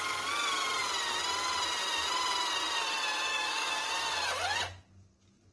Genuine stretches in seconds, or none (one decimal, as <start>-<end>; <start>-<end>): 0.0-3.3; 3.9-5.5